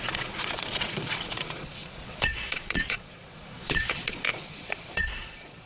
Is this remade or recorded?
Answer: remade